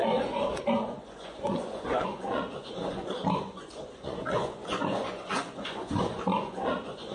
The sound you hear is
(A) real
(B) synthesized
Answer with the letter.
B